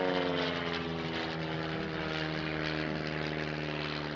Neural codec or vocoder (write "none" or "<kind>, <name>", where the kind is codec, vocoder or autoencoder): none